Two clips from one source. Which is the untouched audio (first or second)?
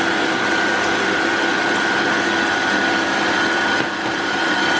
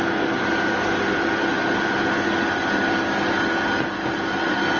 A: second